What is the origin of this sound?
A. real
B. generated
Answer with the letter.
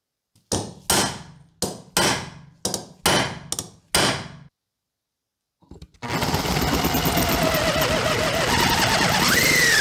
A